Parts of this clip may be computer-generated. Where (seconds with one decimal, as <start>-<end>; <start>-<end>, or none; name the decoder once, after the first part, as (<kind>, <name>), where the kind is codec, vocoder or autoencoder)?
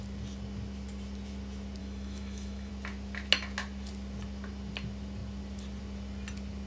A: 1.8-2.7 (autoencoder, DAC-VAE)